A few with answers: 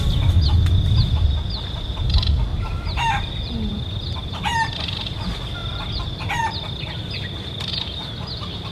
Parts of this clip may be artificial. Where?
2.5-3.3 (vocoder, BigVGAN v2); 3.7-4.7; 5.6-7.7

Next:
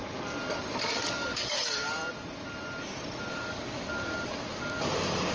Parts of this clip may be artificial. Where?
0.8-2.0 (codec, DAC); 3.3-5.3

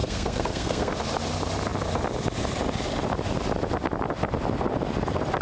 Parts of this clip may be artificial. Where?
0.0-0.9 (codec, SNAC)